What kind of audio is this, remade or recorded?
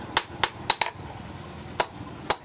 recorded